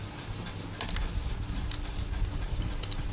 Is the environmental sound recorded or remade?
recorded